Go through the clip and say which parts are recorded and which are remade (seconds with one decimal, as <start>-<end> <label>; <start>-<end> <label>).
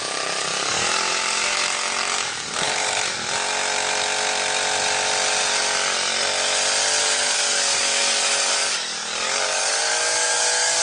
0.0-3.2 remade; 3.2-7.0 recorded; 7.0-10.8 remade